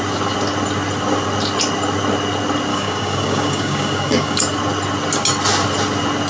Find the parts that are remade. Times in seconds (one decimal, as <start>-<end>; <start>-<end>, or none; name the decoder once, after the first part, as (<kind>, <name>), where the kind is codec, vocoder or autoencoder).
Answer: 2.7-4.4 (codec, DAC)